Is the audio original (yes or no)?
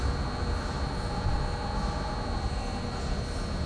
yes